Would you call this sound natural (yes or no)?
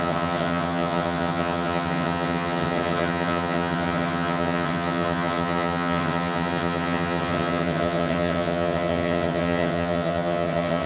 no